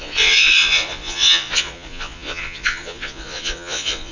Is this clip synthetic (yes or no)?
yes